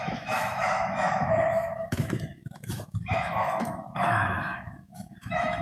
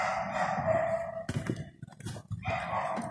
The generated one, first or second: first